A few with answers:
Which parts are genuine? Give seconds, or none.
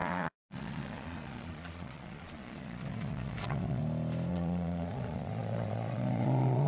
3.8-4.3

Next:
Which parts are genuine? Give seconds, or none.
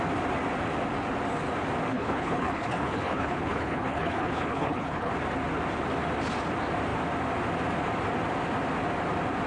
0.0-1.9; 5.1-9.5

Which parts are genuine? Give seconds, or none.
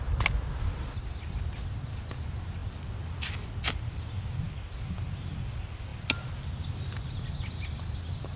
0.0-8.4